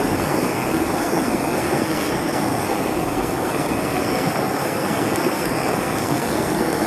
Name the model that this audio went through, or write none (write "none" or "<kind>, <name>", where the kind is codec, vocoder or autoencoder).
codec, SNAC